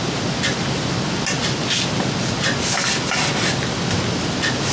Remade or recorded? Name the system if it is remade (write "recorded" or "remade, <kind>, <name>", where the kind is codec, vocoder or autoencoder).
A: recorded